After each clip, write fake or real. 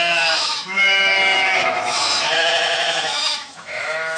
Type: fake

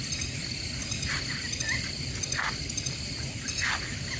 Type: real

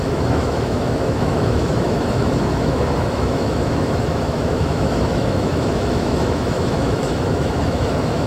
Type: fake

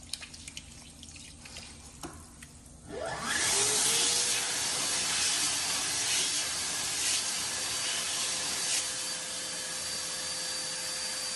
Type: real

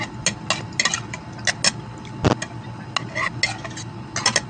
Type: real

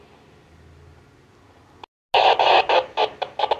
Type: real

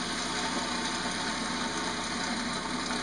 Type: real